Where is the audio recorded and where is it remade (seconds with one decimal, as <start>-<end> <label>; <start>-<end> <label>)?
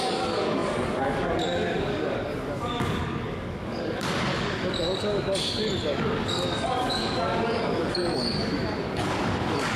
0.0-9.8 remade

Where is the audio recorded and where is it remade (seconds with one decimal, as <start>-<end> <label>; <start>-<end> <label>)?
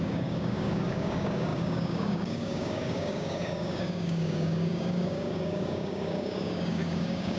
0.0-7.4 remade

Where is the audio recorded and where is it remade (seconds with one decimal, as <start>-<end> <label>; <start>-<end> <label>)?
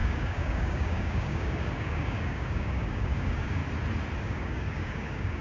0.0-3.6 remade; 3.6-4.2 recorded; 4.2-5.4 remade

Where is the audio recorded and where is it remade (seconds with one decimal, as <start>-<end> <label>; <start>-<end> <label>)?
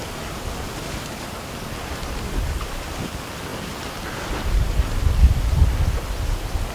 0.0-6.7 recorded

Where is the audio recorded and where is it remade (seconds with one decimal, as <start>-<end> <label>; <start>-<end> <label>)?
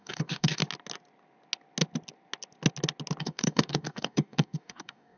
0.0-0.6 remade; 0.6-3.2 recorded; 3.2-5.2 remade